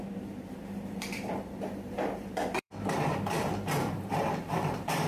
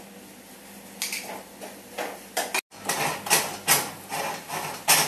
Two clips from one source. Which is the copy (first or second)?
first